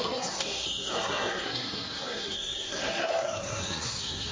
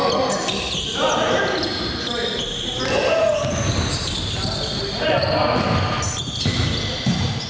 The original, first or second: second